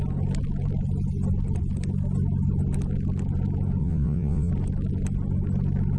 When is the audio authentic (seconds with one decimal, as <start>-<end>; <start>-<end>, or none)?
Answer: 0.0-3.8; 4.5-6.0